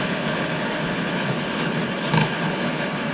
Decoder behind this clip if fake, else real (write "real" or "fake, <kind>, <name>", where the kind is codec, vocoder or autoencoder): fake, codec, HILCodec